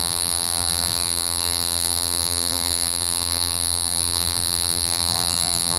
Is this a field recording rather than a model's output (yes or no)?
no